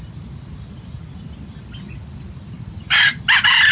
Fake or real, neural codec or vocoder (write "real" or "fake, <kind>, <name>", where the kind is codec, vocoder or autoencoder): real